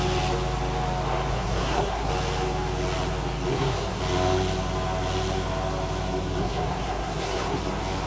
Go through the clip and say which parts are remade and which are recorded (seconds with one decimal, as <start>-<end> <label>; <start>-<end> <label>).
0.0-1.3 recorded; 1.3-2.1 remade; 2.1-3.5 recorded; 3.5-4.0 remade; 4.0-6.4 recorded; 6.4-7.6 remade; 7.6-8.1 recorded